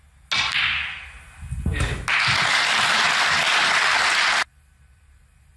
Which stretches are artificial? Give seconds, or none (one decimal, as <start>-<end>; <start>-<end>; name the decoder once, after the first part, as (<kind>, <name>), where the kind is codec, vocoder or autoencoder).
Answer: none